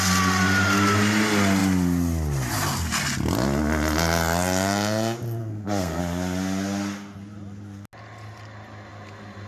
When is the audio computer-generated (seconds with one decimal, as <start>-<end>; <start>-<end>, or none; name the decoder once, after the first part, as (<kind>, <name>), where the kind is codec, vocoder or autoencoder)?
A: 5.4-6.0 (codec, SNAC)